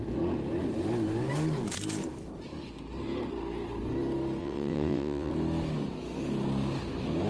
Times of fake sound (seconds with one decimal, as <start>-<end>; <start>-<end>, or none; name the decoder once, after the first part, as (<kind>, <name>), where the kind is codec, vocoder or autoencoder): 4.4-5.3 (vocoder, WaveNeXt)